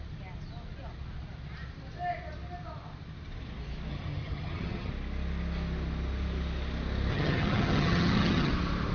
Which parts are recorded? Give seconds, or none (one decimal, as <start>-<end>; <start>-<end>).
0.0-3.9; 4.9-7.1; 8.5-8.9